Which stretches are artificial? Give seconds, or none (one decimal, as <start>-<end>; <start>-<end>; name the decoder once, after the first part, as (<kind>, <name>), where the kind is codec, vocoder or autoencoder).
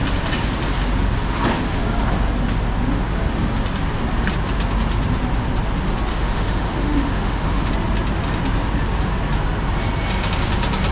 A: 6.1-7.7 (autoencoder, DAC-VAE)